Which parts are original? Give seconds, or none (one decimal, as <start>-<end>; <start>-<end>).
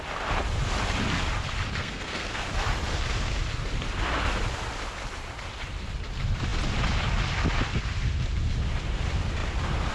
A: 0.0-1.8; 2.5-9.9